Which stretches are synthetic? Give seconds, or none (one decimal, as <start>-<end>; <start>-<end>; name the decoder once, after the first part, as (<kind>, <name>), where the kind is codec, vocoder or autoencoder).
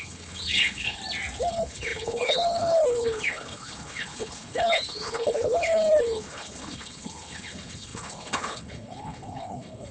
0.0-1.0 (codec, HILCodec); 1.5-9.9